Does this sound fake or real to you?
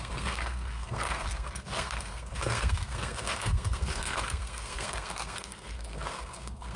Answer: fake